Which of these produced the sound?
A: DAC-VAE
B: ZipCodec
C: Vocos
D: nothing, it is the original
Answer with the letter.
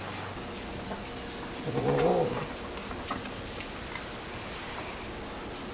D